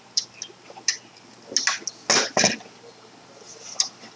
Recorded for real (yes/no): yes